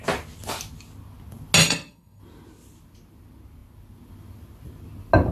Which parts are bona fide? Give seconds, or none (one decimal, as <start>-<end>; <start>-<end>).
0.0-1.6; 2.2-5.3